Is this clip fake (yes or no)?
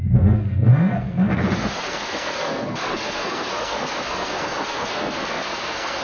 yes